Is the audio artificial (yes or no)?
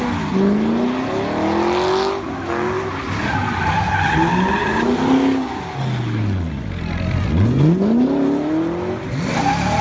no